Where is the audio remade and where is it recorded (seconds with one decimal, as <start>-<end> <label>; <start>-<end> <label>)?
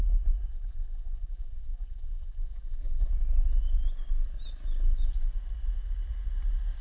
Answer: 0.0-0.5 recorded; 0.5-3.1 remade; 3.1-6.8 recorded